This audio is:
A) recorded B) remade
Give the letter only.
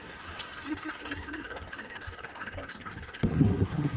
B